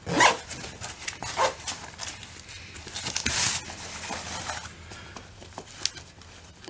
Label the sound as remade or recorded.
recorded